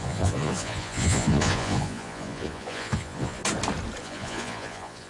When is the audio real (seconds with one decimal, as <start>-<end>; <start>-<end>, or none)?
3.4-4.0